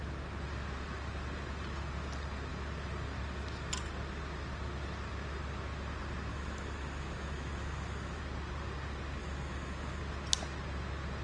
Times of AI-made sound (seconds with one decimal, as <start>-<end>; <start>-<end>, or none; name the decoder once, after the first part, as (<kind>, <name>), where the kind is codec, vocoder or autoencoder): 6.3-8.2 (autoencoder, DAC-VAE); 9.2-10.0